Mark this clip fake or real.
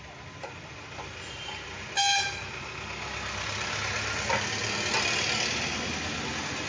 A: real